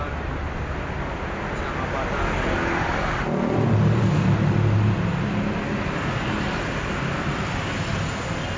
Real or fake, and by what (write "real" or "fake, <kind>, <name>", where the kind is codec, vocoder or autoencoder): real